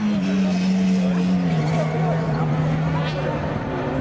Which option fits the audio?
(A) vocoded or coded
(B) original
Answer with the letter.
B